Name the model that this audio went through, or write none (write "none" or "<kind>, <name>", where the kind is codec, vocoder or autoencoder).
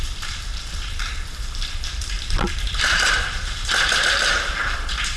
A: vocoder, BigVGAN v2